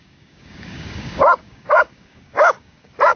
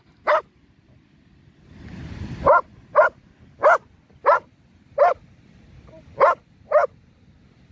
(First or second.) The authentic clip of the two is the second